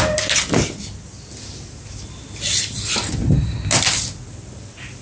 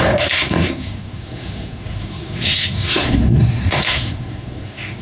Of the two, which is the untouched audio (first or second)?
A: first